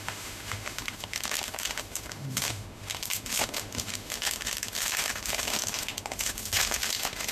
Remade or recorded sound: remade